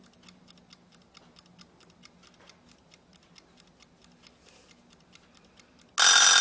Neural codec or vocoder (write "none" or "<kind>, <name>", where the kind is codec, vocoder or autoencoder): none